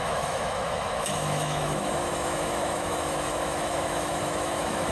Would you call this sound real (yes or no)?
no